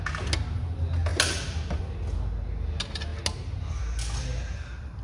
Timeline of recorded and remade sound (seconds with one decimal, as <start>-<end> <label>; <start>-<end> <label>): 0.0-5.0 recorded